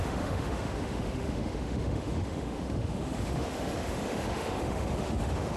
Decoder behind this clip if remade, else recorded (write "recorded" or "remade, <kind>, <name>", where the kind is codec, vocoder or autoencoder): remade, autoencoder, DAC-VAE